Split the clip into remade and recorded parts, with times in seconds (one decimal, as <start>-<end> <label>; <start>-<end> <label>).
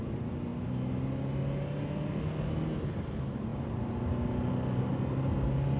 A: 0.0-5.8 recorded